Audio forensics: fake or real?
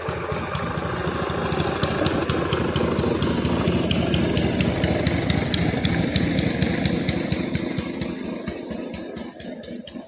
real